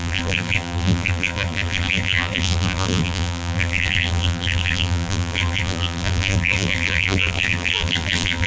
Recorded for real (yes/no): no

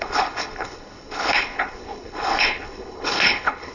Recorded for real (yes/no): no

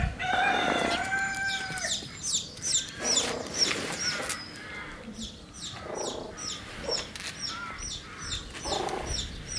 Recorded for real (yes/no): yes